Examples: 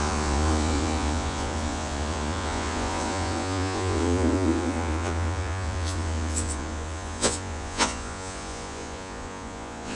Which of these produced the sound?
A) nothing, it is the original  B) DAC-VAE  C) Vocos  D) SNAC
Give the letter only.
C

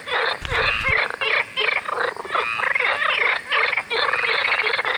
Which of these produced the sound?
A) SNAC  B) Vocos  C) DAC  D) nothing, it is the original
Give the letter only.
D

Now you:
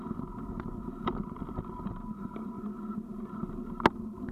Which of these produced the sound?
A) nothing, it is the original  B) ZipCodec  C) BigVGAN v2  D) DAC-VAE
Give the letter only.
A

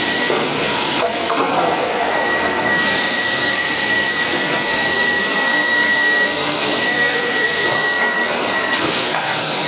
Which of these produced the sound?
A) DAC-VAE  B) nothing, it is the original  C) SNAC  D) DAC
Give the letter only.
C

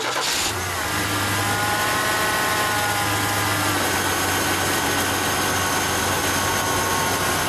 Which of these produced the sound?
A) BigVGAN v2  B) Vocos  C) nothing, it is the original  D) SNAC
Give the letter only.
C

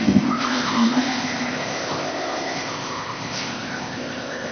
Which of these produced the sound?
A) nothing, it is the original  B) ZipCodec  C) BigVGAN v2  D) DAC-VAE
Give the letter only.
B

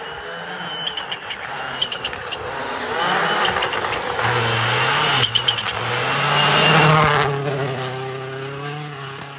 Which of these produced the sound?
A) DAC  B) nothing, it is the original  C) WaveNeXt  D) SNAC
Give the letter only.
B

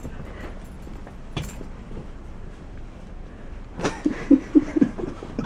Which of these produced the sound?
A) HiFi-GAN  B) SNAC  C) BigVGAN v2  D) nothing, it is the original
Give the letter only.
C